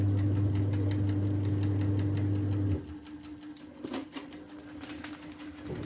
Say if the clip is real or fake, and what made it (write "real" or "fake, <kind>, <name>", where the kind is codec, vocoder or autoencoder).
real